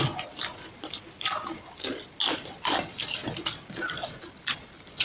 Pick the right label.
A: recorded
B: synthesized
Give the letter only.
A